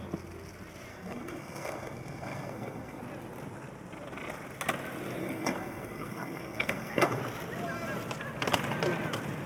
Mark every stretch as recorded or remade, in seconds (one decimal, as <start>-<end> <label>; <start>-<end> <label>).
0.0-0.9 recorded; 0.9-3.0 remade; 3.0-5.2 recorded; 5.2-7.2 remade; 7.2-9.5 recorded